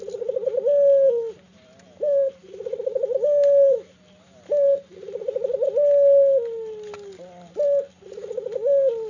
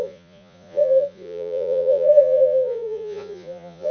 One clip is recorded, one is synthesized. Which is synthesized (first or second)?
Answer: second